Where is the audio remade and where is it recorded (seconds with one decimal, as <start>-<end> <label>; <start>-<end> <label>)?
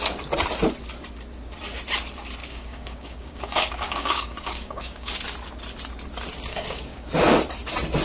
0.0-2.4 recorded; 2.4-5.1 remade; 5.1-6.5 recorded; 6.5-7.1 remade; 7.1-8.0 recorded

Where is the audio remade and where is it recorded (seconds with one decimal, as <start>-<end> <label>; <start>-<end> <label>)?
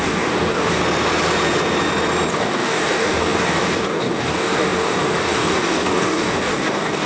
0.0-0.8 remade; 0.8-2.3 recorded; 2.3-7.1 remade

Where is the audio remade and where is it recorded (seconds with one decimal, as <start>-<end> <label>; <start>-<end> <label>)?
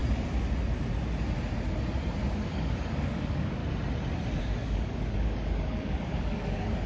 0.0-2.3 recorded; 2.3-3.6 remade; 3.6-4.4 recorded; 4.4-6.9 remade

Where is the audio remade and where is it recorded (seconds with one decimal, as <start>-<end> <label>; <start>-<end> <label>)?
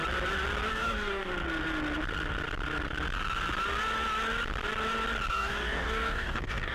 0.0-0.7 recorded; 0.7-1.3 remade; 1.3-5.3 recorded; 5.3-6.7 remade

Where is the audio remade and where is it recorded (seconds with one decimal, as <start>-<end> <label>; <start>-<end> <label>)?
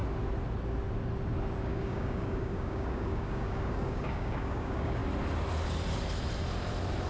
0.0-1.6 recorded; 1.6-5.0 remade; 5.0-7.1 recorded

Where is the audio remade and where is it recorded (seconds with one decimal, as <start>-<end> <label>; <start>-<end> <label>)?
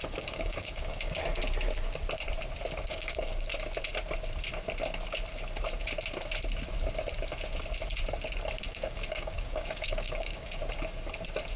0.0-1.2 remade; 1.2-2.9 recorded; 2.9-3.5 remade; 3.5-8.6 recorded; 8.6-10.6 remade; 10.6-11.6 recorded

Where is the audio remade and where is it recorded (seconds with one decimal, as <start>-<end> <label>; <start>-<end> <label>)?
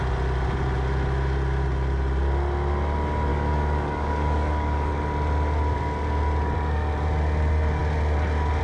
0.0-3.3 recorded; 3.3-4.9 remade; 4.9-8.6 recorded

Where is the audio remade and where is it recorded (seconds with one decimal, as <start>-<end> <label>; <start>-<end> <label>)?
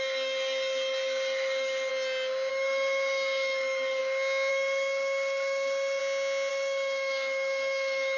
0.0-1.9 remade; 1.9-2.5 recorded; 2.5-4.0 remade; 4.0-4.5 recorded; 4.5-6.0 remade; 6.0-6.5 recorded; 6.5-8.2 remade